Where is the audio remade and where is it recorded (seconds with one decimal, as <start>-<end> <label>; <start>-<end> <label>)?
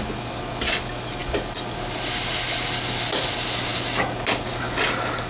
0.0-5.3 recorded